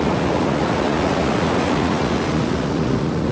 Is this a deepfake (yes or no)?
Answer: yes